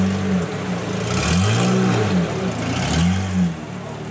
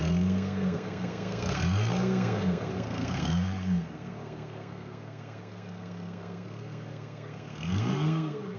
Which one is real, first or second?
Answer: first